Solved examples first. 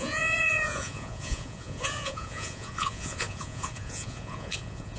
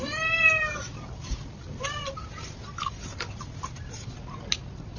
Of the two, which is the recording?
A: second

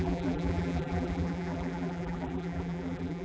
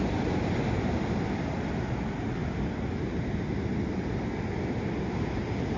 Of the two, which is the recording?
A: second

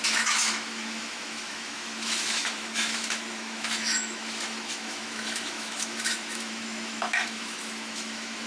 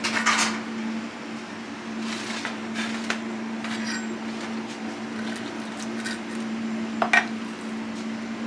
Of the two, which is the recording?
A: second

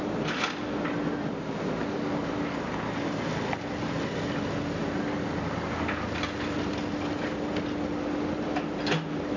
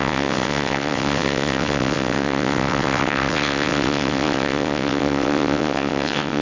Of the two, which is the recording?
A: first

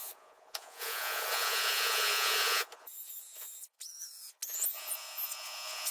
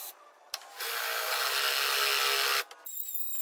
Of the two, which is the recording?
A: second